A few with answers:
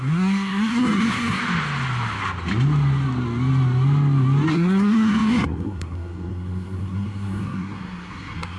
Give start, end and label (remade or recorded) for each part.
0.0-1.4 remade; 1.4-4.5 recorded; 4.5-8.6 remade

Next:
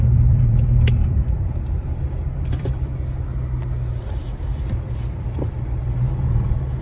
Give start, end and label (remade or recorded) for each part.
0.0-2.9 remade; 2.9-4.0 recorded; 4.0-6.8 remade

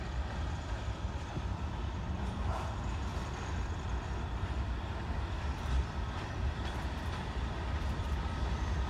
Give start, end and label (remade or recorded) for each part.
0.0-3.1 remade; 3.1-5.4 recorded; 5.4-8.9 remade

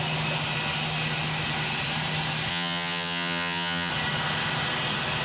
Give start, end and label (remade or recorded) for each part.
0.0-2.5 recorded; 2.5-3.9 remade; 3.9-5.2 recorded

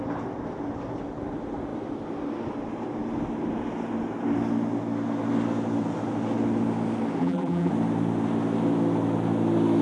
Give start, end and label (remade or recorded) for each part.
0.0-7.2 recorded; 7.2-7.7 remade; 7.7-9.8 recorded

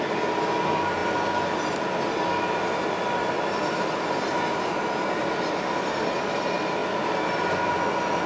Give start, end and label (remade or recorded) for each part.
0.0-8.3 recorded

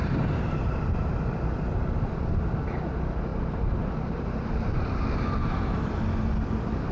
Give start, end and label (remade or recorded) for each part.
0.0-1.1 remade; 1.1-3.3 recorded; 3.3-6.0 remade; 6.0-6.9 recorded

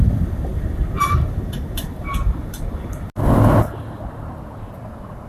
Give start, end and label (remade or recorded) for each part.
0.0-5.3 recorded